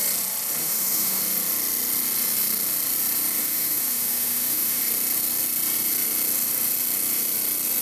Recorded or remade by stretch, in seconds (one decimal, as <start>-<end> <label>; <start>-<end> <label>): 0.0-0.6 recorded; 0.6-1.2 remade; 1.2-3.4 recorded; 3.4-4.8 remade; 4.8-7.8 recorded